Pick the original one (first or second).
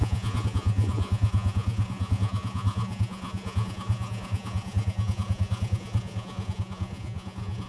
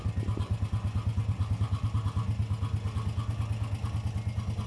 second